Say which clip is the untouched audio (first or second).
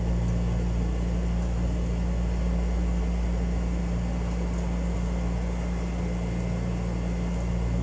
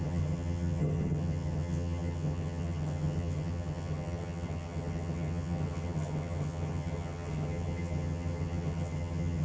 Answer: first